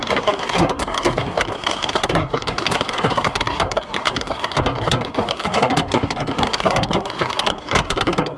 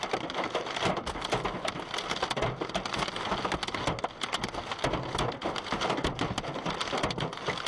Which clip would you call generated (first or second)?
first